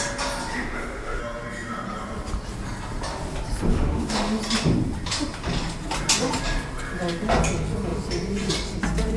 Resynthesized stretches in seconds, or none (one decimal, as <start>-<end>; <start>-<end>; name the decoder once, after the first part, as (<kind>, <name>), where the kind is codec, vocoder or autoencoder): 0.5-1.2 (autoencoder, DAC-VAE); 3.7-4.4